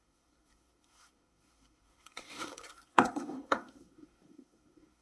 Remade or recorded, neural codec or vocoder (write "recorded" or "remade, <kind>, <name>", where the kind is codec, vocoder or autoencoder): remade, codec, SNAC